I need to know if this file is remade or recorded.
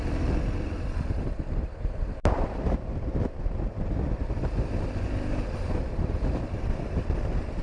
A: remade